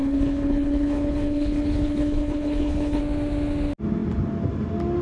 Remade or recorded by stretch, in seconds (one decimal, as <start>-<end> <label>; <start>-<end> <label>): 0.0-3.0 remade; 3.0-5.0 recorded